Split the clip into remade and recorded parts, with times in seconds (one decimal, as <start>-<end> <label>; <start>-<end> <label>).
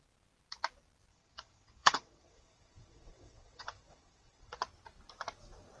0.0-1.1 recorded; 1.1-4.6 remade; 4.6-5.8 recorded